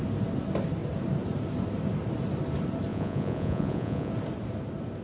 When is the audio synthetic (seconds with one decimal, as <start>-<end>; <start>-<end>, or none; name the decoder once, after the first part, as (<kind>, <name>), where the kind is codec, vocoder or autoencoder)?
2.9-4.1 (vocoder, Vocos)